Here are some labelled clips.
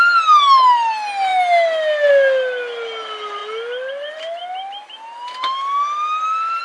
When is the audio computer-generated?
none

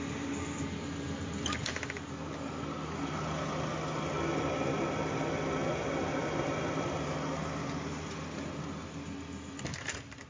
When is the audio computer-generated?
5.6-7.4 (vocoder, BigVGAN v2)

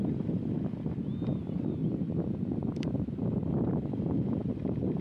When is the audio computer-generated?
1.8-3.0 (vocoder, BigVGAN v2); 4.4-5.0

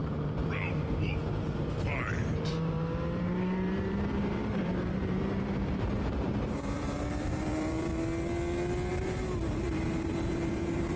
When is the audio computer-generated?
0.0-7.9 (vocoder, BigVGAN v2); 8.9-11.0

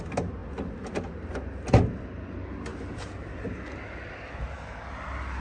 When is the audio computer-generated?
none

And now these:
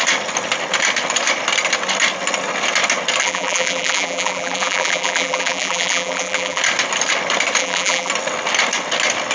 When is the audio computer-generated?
3.2-6.6 (vocoder, BigVGAN v2); 7.6-8.1

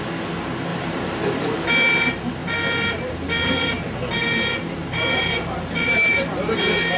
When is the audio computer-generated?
0.7-1.7 (vocoder, BigVGAN v2); 2.4-6.6

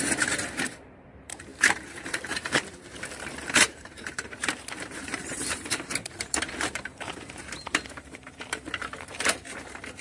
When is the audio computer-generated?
0.0-10.0 (vocoder, BigVGAN v2)